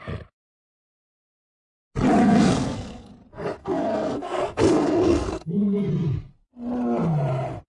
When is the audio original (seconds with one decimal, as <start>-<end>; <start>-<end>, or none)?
0.0-2.2; 3.1-3.6; 5.9-7.7